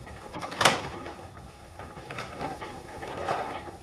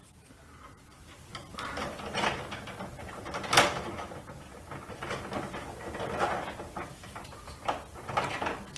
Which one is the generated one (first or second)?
first